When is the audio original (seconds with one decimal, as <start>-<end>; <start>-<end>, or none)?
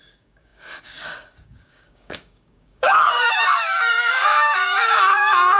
none